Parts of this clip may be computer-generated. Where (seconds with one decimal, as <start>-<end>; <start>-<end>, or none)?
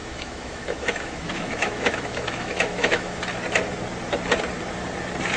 0.0-3.2